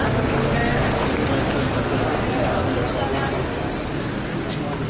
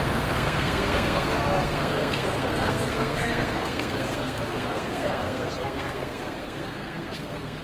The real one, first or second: first